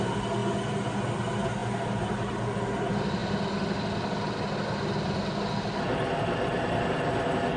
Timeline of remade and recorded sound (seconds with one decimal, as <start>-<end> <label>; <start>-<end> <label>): 0.0-7.6 recorded